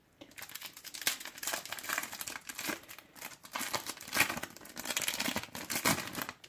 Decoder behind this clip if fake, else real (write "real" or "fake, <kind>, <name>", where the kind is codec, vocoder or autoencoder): real